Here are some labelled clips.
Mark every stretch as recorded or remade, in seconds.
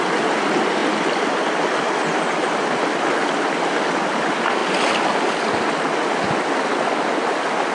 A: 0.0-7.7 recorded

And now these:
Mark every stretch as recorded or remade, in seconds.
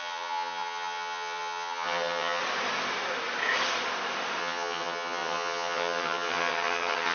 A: 0.0-2.4 remade; 2.4-4.4 recorded; 4.4-7.1 remade